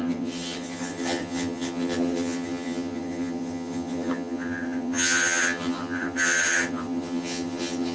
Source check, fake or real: fake